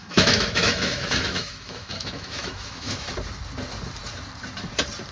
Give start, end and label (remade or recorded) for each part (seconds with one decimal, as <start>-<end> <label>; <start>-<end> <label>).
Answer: 0.0-3.1 remade; 3.1-5.1 recorded